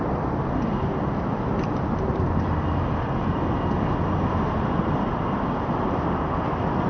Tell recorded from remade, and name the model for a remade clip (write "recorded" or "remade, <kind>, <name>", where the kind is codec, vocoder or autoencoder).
recorded